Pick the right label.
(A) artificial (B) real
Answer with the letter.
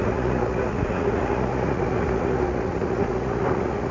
A